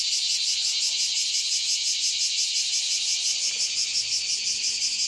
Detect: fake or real real